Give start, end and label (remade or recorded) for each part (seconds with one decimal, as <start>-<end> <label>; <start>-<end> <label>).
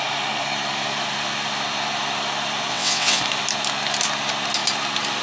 0.0-2.7 recorded; 2.7-3.2 remade; 3.2-5.2 recorded